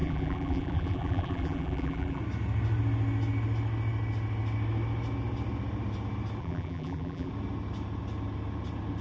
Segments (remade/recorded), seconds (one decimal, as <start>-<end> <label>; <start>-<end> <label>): 0.0-2.2 remade; 2.2-6.4 recorded; 6.4-7.3 remade; 7.3-9.0 recorded